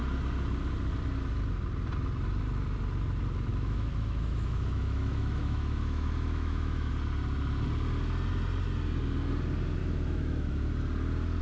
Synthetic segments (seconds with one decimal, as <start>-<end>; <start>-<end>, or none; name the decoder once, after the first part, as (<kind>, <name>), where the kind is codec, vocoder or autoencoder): 3.5-6.9 (autoencoder, DAC-VAE); 9.8-10.7